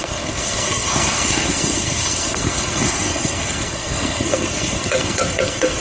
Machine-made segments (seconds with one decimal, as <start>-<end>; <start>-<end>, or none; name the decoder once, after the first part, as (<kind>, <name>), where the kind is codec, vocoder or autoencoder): 0.0-5.8 (codec, SNAC)